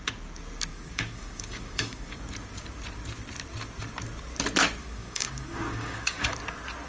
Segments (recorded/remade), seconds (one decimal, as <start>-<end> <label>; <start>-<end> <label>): 0.0-0.7 recorded; 0.7-2.2 remade; 2.2-4.8 recorded; 4.8-6.3 remade; 6.3-6.9 recorded